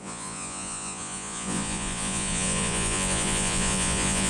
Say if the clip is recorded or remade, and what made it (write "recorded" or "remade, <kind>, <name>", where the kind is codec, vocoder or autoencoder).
remade, vocoder, Vocos